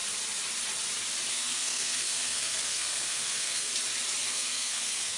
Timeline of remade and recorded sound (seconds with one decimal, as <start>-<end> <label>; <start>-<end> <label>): 0.0-1.3 recorded; 1.3-3.7 remade; 3.7-4.3 recorded; 4.3-5.2 remade